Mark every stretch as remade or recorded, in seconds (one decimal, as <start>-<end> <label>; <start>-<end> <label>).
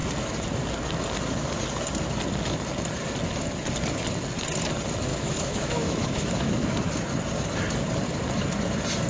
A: 0.0-5.1 recorded; 5.1-6.7 remade; 6.7-9.1 recorded